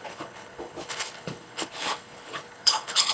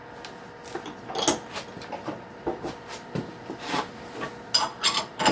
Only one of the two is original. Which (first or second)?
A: second